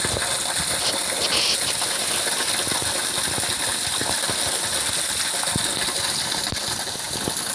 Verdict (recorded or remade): recorded